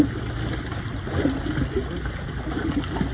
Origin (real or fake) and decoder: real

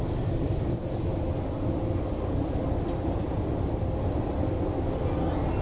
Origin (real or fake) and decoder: real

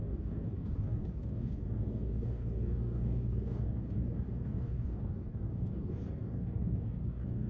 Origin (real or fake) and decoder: fake, codec, DAC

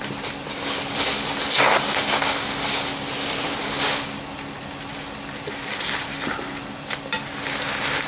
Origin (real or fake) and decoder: real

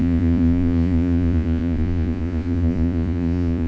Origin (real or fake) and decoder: fake, vocoder, Vocos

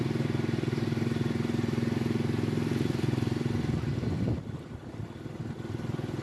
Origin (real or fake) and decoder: real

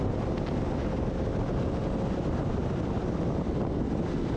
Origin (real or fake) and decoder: real